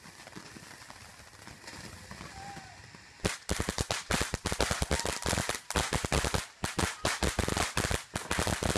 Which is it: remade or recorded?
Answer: recorded